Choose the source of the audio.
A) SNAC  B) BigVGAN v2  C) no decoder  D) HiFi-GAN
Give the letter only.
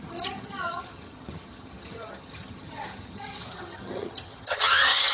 D